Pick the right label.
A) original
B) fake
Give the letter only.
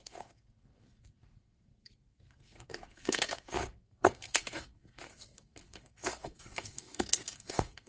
B